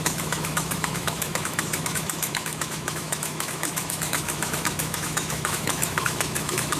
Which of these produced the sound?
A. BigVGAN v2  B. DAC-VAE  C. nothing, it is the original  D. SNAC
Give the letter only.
B